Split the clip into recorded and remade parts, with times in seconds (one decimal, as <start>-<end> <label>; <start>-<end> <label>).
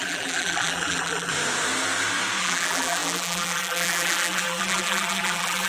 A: 0.0-1.3 remade; 1.3-2.4 recorded; 2.4-5.7 remade